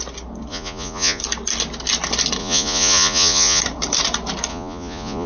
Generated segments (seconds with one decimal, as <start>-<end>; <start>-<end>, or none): 0.5-1.2; 2.4-3.6; 4.5-5.3